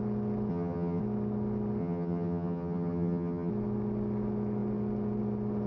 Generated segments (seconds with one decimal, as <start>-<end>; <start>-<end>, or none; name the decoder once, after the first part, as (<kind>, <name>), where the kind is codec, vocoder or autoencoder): 0.5-1.0 (vocoder, HiFi-GAN); 1.8-3.5